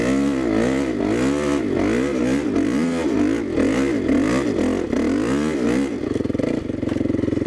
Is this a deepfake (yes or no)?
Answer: no